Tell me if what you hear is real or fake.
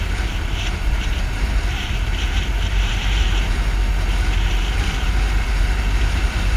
fake